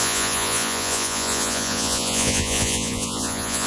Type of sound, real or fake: fake